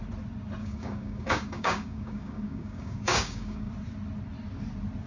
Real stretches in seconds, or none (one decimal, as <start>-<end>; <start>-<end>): 0.0-0.6; 3.7-5.1